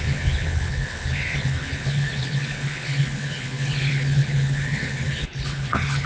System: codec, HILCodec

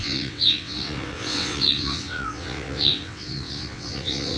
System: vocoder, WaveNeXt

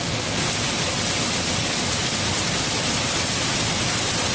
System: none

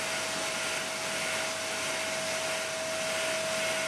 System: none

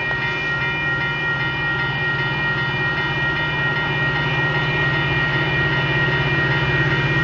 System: none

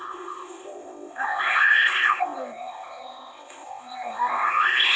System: codec, ZipCodec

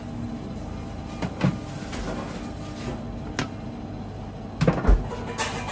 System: none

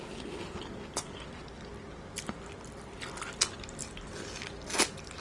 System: none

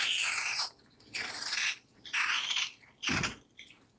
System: none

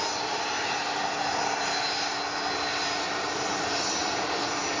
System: none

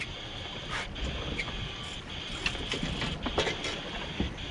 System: none